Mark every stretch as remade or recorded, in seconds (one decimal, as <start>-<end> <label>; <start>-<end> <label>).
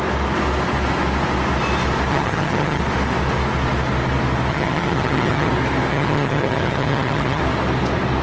0.0-2.1 recorded; 2.1-2.8 remade; 2.8-4.5 recorded; 4.5-5.5 remade; 5.5-5.9 recorded; 5.9-7.4 remade; 7.4-8.2 recorded